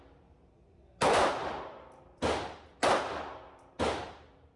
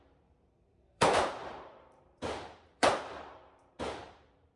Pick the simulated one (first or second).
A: second